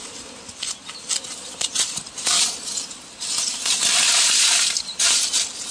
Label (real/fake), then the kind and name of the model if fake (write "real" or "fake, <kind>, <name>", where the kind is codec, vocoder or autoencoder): real